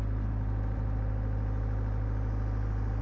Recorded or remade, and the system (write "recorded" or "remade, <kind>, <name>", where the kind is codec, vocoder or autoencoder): recorded